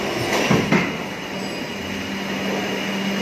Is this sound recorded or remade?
recorded